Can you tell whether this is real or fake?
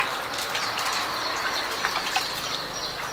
real